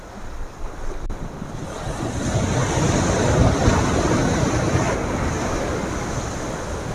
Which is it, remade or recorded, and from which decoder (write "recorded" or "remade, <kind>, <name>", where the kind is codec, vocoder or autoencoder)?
recorded